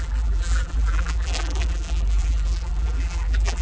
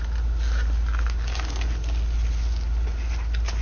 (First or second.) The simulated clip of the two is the first